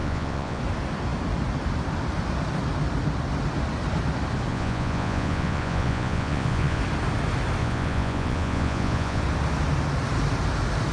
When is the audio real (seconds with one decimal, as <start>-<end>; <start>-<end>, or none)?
0.6-4.5; 6.8-7.6; 9.2-10.9